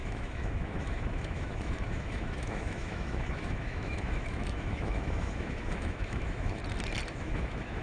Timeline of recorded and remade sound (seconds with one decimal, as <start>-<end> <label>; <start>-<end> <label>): 0.0-6.6 remade; 6.6-7.1 recorded; 7.1-7.8 remade